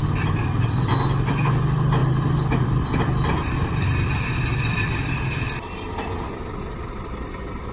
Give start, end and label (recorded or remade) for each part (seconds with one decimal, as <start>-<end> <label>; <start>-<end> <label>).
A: 0.0-0.9 remade; 0.9-2.0 recorded; 2.0-3.0 remade; 3.0-3.4 recorded; 3.4-5.2 remade; 5.2-7.7 recorded

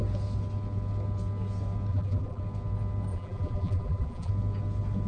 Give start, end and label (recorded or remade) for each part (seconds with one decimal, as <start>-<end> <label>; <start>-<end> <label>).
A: 0.0-1.9 recorded; 1.9-2.4 remade; 2.4-3.1 recorded; 3.1-4.3 remade; 4.3-5.1 recorded

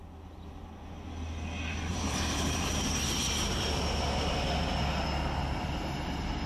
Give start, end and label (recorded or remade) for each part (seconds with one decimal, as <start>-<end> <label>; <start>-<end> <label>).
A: 0.0-1.9 recorded; 1.9-3.8 remade; 3.8-6.5 recorded

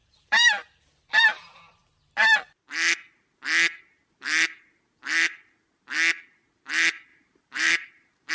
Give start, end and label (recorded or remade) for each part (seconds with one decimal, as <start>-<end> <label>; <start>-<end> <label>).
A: 0.0-1.2 remade; 1.2-7.1 recorded; 7.1-8.3 remade

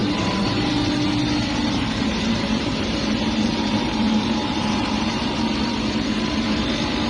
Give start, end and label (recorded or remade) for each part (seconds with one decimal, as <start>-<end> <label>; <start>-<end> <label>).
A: 0.0-0.7 remade; 0.7-1.6 recorded; 1.6-5.2 remade; 5.2-7.1 recorded

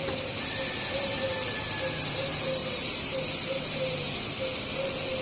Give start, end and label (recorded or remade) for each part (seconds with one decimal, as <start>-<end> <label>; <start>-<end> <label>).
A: 0.0-2.6 recorded; 2.6-4.4 remade; 4.4-5.2 recorded

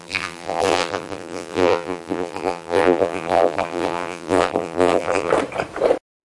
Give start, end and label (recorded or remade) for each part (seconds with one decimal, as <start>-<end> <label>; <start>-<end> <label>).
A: 0.0-5.3 remade; 5.3-6.2 recorded